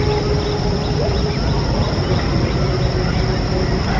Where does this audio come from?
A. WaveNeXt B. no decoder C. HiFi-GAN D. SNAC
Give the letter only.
B